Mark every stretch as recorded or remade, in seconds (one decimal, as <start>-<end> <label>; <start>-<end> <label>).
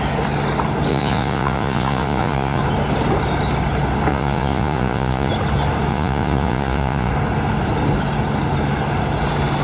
0.0-0.9 recorded; 0.9-2.6 remade; 2.6-4.1 recorded; 4.1-5.3 remade; 5.3-5.9 recorded; 5.9-7.1 remade; 7.1-9.6 recorded